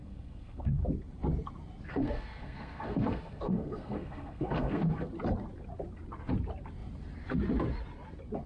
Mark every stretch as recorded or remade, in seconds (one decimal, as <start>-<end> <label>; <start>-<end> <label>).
0.0-0.8 remade; 0.8-1.9 recorded; 1.9-5.1 remade; 5.1-8.5 recorded